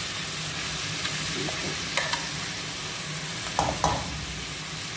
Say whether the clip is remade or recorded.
recorded